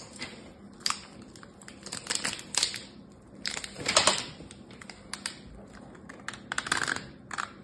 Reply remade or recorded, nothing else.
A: recorded